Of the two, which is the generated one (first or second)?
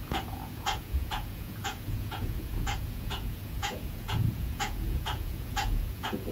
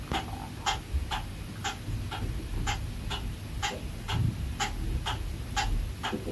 first